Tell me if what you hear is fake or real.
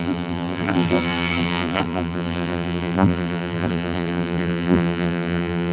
fake